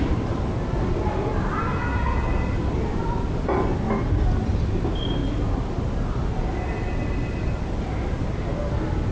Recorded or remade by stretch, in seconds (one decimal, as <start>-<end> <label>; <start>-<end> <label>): 0.0-9.1 recorded